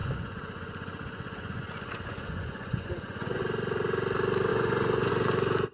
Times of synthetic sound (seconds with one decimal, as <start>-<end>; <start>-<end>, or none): 0.0-3.4; 4.5-5.1